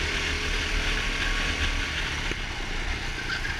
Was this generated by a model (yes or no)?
no